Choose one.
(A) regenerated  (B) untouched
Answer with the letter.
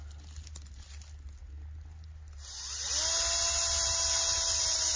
B